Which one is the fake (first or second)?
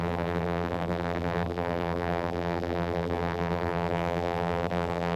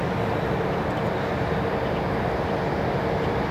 first